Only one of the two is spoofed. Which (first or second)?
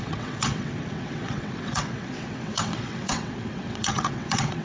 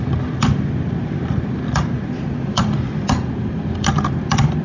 first